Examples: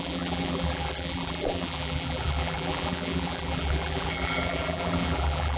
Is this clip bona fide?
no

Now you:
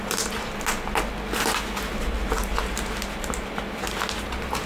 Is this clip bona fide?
yes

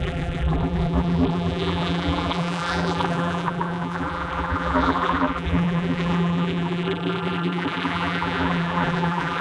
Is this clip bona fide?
no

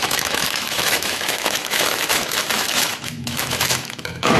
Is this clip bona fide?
no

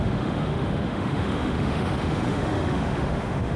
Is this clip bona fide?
no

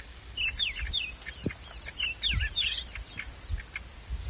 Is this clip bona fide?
yes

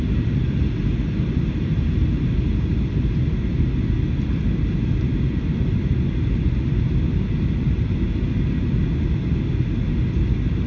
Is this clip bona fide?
yes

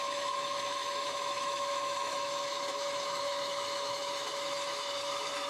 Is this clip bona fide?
no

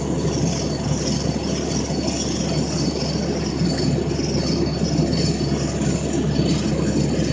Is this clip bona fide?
yes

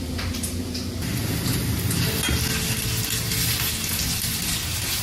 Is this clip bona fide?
yes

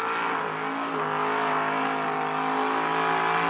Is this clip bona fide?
yes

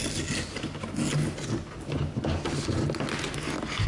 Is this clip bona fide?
yes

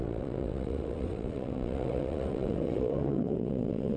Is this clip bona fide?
no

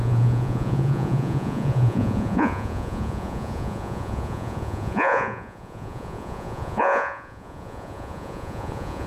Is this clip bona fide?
no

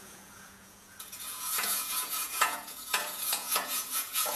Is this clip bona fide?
no